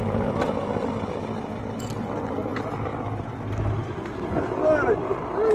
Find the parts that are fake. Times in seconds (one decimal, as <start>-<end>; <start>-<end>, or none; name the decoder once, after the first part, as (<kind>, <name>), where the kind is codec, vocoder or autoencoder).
none

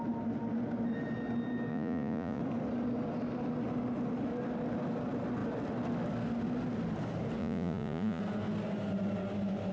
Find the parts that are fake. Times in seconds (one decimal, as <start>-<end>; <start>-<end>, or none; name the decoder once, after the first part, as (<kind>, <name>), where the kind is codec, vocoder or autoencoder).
1.7-2.4 (vocoder, Vocos); 7.4-8.2